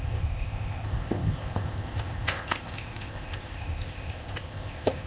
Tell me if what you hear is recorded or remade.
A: remade